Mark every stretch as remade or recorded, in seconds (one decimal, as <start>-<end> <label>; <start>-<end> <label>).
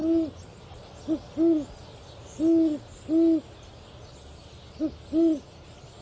0.0-6.0 recorded